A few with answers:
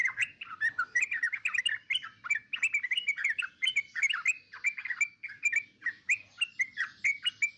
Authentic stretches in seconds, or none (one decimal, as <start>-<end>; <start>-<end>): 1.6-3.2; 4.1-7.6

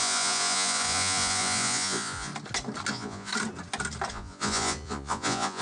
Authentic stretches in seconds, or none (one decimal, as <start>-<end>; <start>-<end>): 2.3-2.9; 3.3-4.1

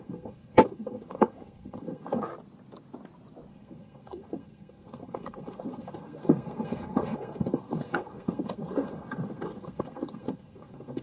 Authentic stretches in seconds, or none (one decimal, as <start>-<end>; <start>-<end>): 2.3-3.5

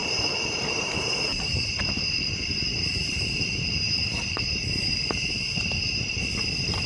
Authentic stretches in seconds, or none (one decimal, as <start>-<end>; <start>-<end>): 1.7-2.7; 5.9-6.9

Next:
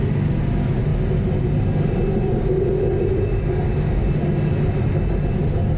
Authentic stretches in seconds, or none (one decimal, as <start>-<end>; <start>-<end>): 0.0-5.8

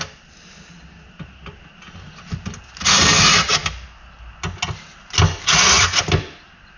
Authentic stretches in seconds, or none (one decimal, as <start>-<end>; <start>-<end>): 0.0-6.8

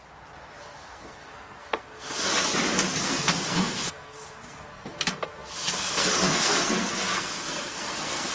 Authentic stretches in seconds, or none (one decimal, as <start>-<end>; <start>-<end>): 0.0-0.6; 2.3-3.0

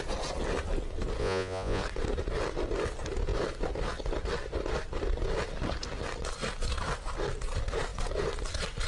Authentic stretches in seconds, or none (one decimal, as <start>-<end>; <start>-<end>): 0.0-1.2; 1.8-8.9